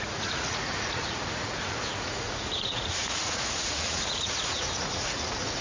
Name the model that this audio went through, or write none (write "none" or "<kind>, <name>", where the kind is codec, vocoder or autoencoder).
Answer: vocoder, Vocos